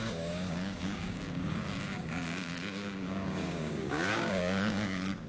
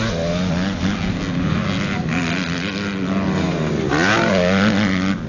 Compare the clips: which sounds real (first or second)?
second